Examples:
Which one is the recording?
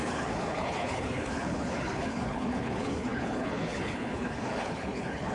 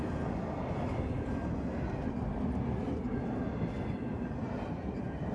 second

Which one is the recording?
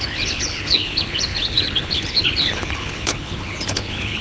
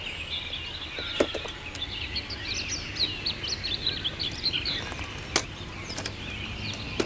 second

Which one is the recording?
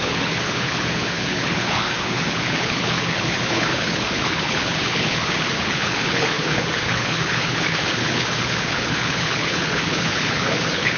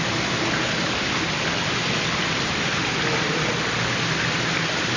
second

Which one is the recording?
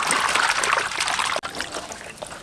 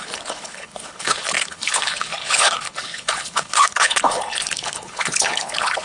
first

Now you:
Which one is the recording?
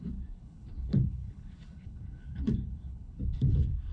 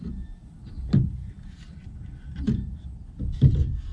second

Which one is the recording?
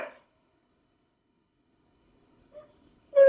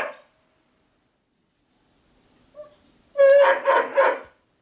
second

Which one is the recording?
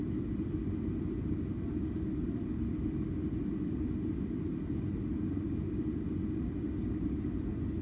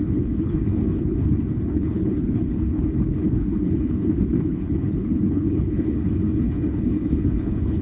first